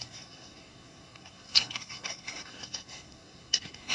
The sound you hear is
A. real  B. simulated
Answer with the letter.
B